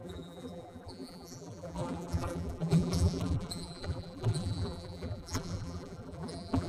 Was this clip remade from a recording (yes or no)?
yes